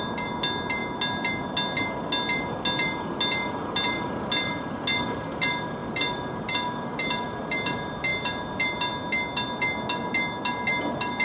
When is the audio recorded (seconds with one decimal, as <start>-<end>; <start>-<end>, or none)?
0.0-11.2